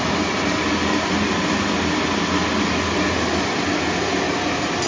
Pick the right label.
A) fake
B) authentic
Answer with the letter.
B